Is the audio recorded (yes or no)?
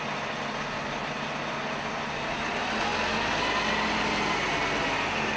yes